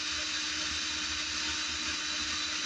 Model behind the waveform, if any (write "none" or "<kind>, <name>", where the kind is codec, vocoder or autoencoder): none